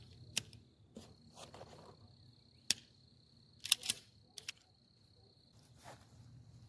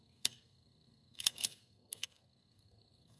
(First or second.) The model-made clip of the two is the second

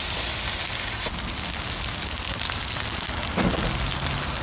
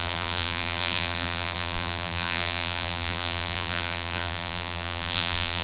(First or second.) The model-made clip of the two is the second